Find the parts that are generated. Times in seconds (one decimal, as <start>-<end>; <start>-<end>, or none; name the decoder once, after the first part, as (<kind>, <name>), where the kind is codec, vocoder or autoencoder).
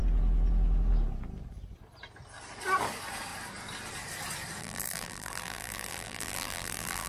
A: 4.6-7.1 (vocoder, BigVGAN v2)